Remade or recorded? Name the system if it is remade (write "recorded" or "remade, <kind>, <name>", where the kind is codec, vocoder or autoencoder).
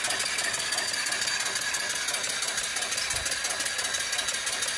recorded